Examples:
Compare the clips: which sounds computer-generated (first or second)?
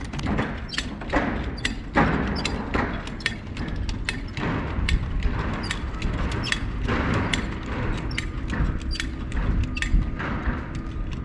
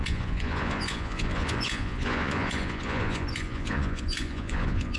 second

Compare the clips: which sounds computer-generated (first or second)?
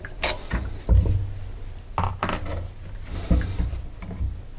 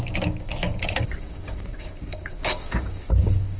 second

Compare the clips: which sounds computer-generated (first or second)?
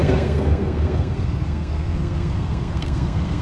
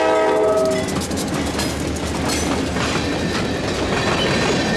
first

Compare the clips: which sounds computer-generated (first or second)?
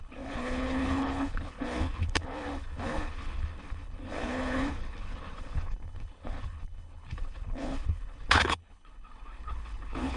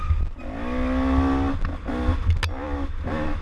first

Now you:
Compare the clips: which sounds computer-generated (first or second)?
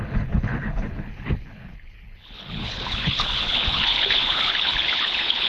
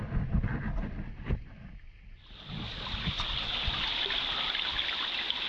first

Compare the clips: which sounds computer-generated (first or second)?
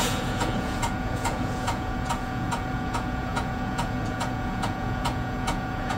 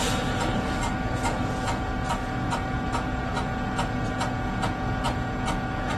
first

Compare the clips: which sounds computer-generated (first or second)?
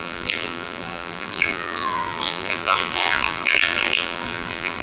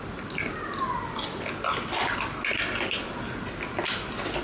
first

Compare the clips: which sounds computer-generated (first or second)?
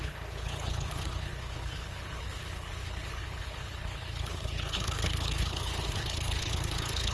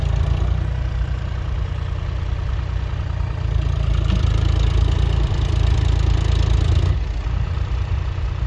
first